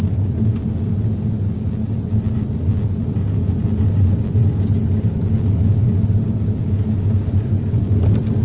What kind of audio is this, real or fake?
real